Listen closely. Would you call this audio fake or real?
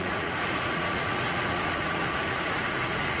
fake